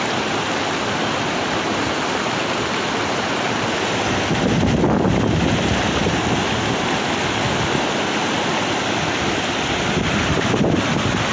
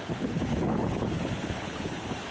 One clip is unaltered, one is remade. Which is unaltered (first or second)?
first